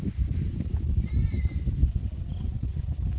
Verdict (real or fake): fake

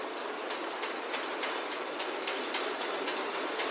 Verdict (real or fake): fake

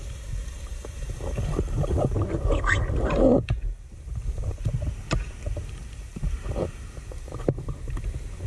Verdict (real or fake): fake